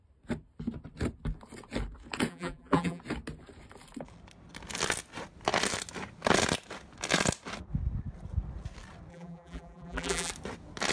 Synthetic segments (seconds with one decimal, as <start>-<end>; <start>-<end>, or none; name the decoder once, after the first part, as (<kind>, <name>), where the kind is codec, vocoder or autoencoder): 2.3-3.0 (vocoder, BigVGAN v2); 9.1-10.3